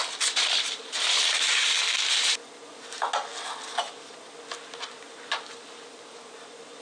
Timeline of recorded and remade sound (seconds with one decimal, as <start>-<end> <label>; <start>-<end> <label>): 0.0-0.8 remade; 0.8-6.8 recorded